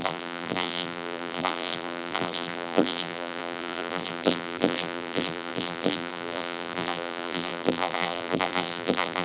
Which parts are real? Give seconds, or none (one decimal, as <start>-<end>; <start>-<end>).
none